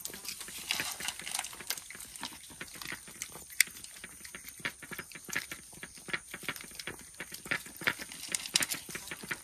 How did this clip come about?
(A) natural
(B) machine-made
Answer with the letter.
A